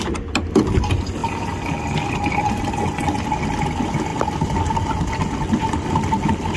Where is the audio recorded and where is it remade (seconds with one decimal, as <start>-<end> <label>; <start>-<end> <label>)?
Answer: 0.0-6.6 recorded